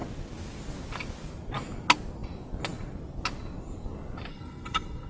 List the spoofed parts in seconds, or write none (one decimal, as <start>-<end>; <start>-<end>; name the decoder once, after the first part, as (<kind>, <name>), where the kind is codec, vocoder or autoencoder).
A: 4.3-5.1 (codec, SNAC)